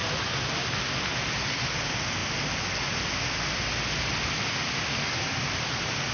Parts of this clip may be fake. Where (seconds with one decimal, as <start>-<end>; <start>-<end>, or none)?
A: none